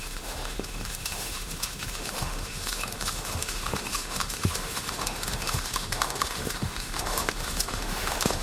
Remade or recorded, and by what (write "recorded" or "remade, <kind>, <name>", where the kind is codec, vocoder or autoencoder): remade, autoencoder, DAC-VAE